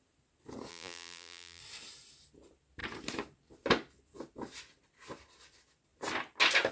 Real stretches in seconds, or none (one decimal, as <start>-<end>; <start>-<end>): 0.0-0.7; 1.6-6.7